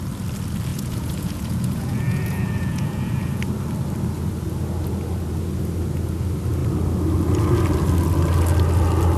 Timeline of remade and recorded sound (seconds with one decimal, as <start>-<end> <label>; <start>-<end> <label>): 0.0-0.7 recorded; 0.7-3.4 remade; 3.4-9.2 recorded